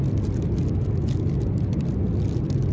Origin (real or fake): real